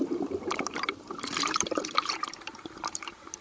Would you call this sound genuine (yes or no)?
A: no